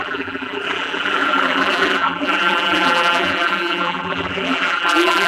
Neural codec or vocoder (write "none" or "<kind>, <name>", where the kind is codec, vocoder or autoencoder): vocoder, BigVGAN v2